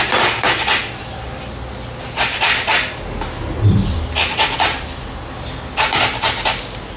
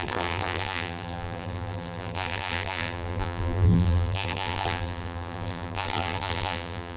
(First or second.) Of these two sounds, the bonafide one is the first